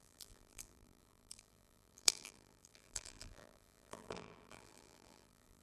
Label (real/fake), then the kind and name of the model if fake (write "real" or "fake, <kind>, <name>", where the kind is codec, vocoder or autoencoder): fake, vocoder, BigVGAN v2